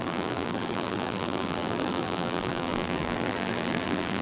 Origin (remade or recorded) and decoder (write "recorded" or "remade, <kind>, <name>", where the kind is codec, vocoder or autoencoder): remade, vocoder, BigVGAN v2